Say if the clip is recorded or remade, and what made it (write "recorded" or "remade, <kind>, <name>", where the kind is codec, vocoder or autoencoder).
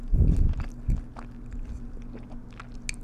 recorded